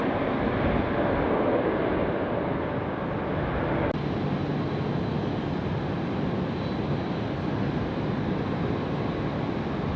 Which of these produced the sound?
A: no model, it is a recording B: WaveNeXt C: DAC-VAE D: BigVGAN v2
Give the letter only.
A